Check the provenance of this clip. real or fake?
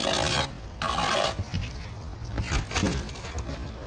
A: real